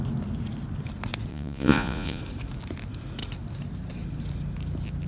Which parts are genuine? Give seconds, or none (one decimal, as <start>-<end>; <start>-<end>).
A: 0.0-1.3; 2.2-5.1